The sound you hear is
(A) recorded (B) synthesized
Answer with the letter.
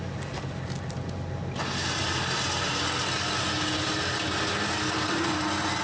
A